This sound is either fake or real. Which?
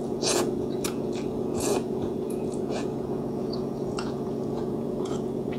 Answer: fake